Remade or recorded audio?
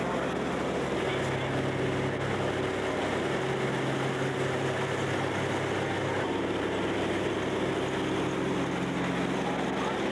recorded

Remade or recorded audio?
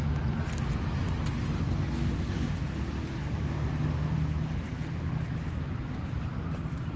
recorded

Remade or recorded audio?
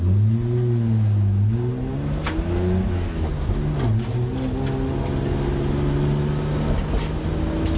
recorded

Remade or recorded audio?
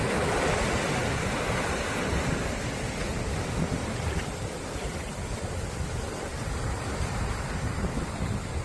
recorded